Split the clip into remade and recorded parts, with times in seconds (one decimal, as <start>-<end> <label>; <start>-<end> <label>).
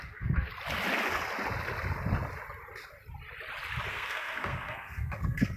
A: 0.0-0.5 remade; 0.5-3.9 recorded; 3.9-5.6 remade